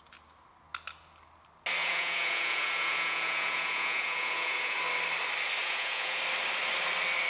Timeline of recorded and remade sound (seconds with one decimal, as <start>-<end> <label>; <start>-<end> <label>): 0.0-1.8 recorded; 1.8-4.8 remade; 4.8-5.6 recorded; 5.6-6.2 remade; 6.2-7.3 recorded